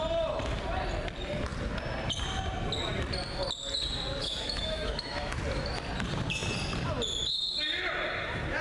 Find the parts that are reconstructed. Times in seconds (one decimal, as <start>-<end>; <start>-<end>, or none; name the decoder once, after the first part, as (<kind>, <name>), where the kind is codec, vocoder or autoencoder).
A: 4.2-5.4 (autoencoder, DAC-VAE)